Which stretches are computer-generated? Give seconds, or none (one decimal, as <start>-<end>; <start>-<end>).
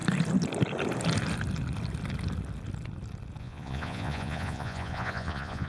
3.4-5.7